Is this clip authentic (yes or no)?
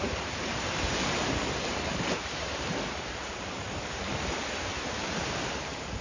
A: no